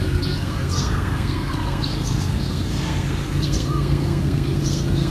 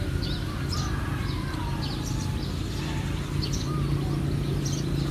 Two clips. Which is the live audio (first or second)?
second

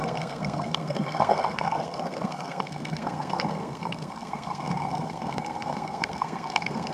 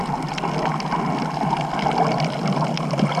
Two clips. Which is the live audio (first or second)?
second